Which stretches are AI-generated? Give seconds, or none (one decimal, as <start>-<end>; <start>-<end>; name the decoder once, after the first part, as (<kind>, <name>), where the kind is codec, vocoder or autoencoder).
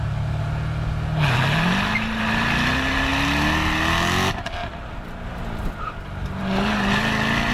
none